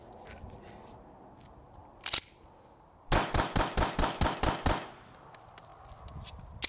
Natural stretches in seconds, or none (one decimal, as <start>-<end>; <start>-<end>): 0.0-6.7